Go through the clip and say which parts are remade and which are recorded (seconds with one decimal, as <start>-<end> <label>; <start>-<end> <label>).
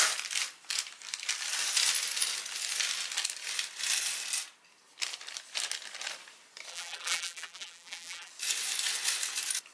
0.0-6.7 recorded; 6.7-8.3 remade; 8.3-9.7 recorded